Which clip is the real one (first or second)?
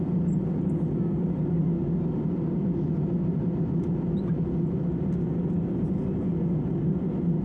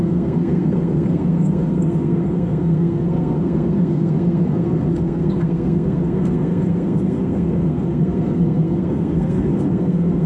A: first